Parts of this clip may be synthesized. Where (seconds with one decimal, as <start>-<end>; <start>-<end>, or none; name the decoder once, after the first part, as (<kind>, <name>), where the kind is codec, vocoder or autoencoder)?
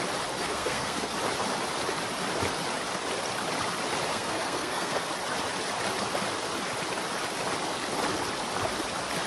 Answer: 0.4-1.1 (codec, SNAC); 4.1-5.1